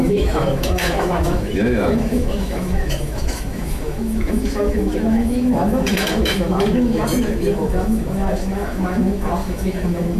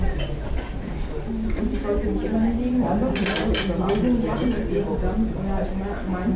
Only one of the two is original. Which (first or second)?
second